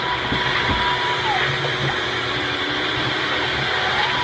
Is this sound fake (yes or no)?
no